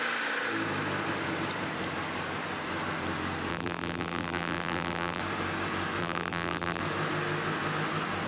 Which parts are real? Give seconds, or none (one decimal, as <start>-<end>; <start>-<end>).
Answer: 0.0-3.5; 5.2-6.0; 6.8-8.3